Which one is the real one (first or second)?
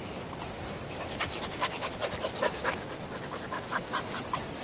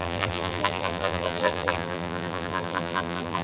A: first